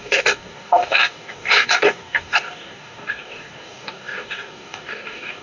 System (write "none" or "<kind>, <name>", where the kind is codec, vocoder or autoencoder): codec, DAC